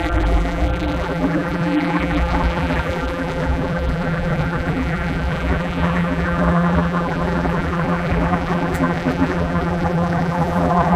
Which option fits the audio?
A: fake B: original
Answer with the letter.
A